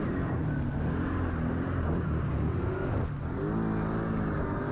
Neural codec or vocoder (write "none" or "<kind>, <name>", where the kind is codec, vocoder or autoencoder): none